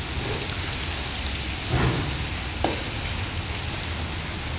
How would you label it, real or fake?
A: real